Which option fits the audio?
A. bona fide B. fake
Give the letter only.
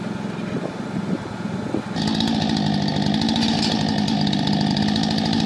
A